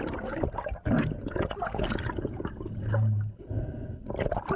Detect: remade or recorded recorded